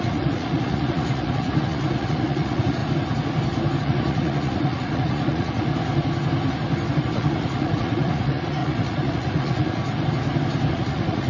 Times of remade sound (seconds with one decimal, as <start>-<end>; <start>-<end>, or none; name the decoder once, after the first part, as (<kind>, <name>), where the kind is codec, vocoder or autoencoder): 0.0-2.8 (vocoder, Vocos); 3.8-5.7; 6.9-9.8; 10.7-11.3